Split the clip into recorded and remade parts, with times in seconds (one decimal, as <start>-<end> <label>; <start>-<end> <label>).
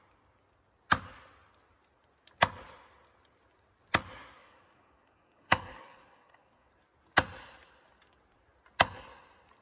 0.0-4.4 recorded; 4.4-6.7 remade; 6.7-9.6 recorded